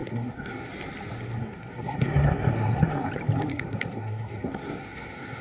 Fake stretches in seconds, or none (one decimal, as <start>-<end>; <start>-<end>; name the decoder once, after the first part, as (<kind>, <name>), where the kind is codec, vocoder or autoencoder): 0.0-0.7 (codec, SNAC); 1.4-3.1; 3.5-5.4